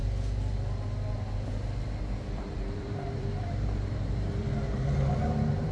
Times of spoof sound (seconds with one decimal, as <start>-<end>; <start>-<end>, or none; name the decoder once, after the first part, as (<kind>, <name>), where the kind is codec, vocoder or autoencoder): 2.0-4.4 (vocoder, BigVGAN v2); 5.1-5.7